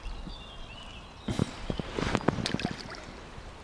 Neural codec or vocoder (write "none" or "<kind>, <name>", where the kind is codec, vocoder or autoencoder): none